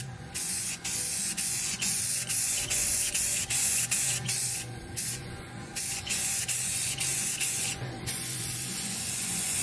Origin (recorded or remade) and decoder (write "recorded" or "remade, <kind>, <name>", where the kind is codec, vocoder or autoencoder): remade, vocoder, Vocos